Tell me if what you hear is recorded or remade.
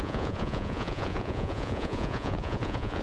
remade